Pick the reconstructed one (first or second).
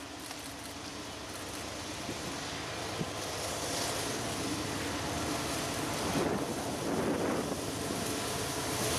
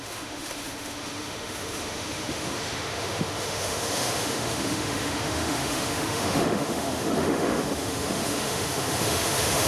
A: second